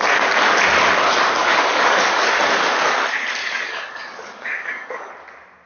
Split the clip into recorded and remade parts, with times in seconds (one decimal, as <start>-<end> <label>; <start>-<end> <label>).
0.0-1.4 recorded; 1.4-2.4 remade; 2.4-3.4 recorded; 3.4-5.1 remade; 5.1-5.7 recorded